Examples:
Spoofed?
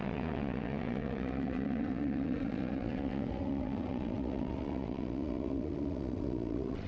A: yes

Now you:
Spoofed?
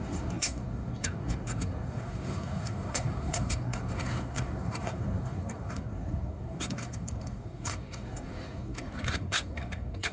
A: yes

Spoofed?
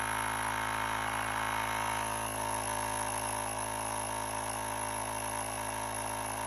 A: no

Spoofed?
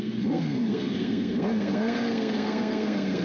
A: yes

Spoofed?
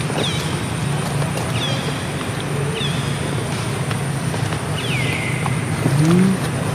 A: no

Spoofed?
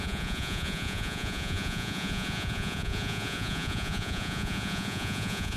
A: yes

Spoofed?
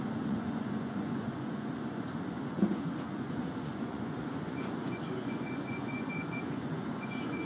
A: yes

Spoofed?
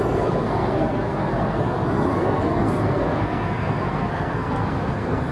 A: yes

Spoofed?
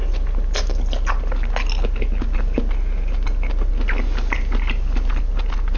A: no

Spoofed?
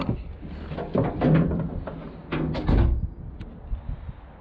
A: no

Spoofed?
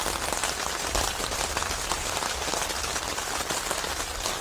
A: no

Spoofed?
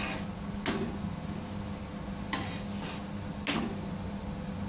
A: no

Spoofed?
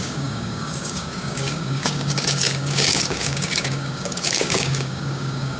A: yes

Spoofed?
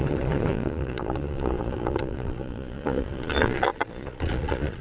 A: yes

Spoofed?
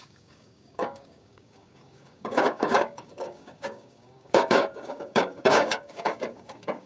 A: yes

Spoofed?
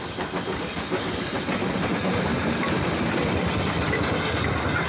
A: no